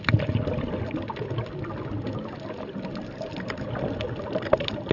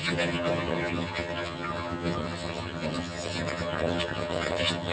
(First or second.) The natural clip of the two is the first